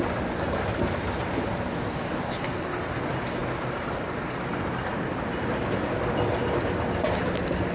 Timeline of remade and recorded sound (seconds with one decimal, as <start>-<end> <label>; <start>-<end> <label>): 0.0-7.7 recorded